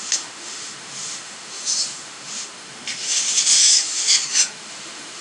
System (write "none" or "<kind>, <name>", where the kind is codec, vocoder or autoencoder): autoencoder, DAC-VAE